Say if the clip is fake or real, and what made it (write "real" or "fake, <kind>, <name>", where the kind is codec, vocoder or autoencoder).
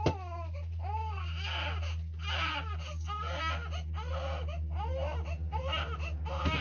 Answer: real